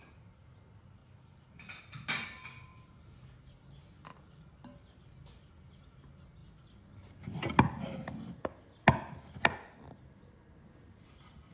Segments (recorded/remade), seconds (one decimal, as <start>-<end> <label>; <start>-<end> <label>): 0.0-1.0 recorded; 1.0-1.8 remade; 1.8-2.7 recorded; 2.7-3.4 remade; 3.4-4.1 recorded; 4.1-5.0 remade; 5.0-11.5 recorded